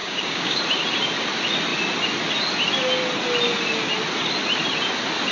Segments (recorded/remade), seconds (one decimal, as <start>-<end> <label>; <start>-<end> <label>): 0.0-0.6 remade; 0.6-5.3 recorded